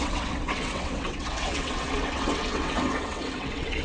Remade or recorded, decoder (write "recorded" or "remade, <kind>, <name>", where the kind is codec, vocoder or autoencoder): remade, vocoder, WaveNeXt